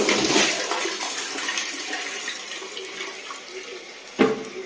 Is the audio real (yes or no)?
yes